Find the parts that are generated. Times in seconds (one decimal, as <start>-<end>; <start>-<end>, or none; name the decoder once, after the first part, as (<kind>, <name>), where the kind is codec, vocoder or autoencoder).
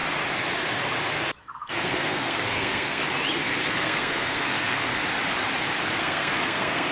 1.4-3.0 (codec, SNAC); 3.6-4.9; 6.0-6.9